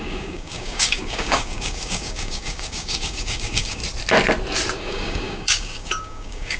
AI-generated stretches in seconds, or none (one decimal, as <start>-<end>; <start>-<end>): 0.0-3.8; 4.8-6.6